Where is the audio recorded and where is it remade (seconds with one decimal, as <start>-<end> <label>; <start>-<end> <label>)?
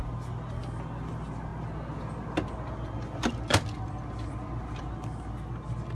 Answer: 0.0-5.9 recorded